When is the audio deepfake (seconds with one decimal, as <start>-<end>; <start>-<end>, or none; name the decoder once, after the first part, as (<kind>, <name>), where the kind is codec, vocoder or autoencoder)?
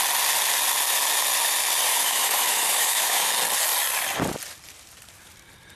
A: 1.9-3.3 (autoencoder, DAC-VAE)